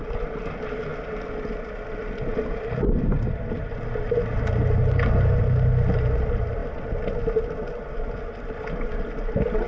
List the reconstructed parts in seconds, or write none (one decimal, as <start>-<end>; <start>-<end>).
none

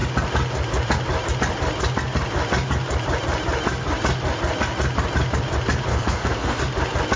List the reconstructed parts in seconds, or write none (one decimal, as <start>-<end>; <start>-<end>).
5.9-6.6

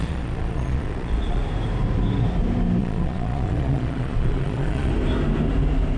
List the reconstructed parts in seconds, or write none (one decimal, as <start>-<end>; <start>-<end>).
0.0-1.4; 2.8-4.9

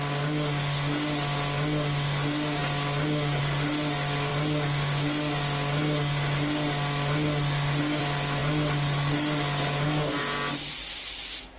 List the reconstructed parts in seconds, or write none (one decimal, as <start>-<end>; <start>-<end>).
none